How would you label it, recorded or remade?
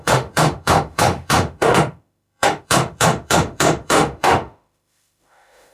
remade